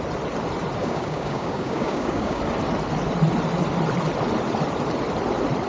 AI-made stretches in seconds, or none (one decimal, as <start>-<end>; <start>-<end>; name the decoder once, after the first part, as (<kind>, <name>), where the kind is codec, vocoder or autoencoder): 0.8-2.4 (codec, DAC)